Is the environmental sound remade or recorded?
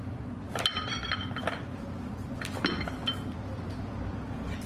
recorded